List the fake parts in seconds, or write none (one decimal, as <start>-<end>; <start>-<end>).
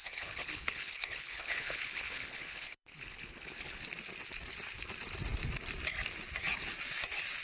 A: 0.0-3.8